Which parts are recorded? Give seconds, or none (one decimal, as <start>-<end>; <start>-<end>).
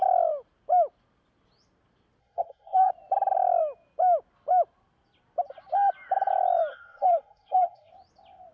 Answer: 0.0-2.2; 2.9-6.7; 7.9-8.5